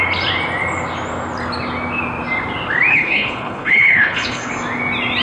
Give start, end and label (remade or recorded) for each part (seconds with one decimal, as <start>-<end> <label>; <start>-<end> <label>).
0.0-2.9 recorded; 2.9-4.5 remade; 4.5-5.2 recorded